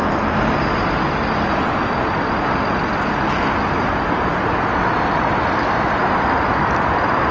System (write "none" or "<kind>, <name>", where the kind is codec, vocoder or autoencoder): none